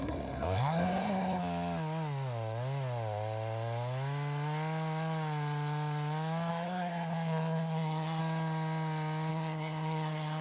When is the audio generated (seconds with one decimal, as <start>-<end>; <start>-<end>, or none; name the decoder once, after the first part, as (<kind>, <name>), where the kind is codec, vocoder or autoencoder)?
0.0-1.4 (codec, SNAC); 6.5-8.2; 9.3-10.4